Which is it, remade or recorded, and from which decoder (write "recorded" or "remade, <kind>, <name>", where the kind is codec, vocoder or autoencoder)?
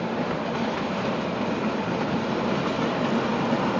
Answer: recorded